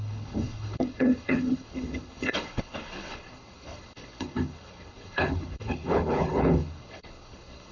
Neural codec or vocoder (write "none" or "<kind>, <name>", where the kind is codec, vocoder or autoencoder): codec, HILCodec